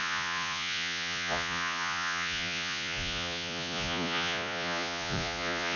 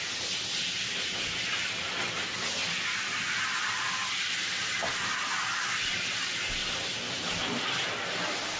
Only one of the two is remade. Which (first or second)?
first